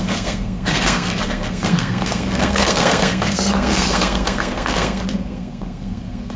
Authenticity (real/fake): fake